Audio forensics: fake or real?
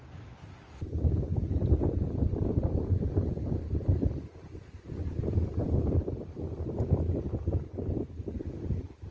real